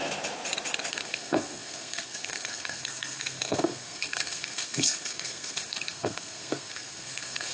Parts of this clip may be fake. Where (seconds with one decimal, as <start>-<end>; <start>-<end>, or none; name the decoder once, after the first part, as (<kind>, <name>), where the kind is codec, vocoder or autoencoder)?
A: 0.9-7.5 (codec, SNAC)